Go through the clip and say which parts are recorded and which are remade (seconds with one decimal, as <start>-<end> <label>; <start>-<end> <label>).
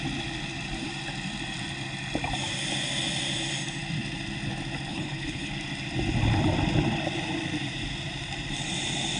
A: 0.0-4.9 recorded; 4.9-5.5 remade; 5.5-9.2 recorded